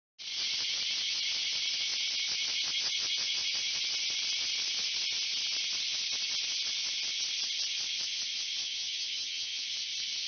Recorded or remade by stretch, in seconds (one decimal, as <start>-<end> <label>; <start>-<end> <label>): 0.0-8.6 recorded; 8.6-9.6 remade; 9.6-10.3 recorded